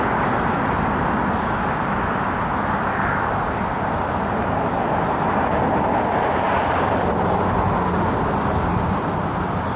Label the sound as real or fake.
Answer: real